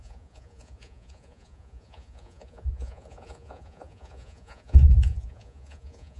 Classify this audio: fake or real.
fake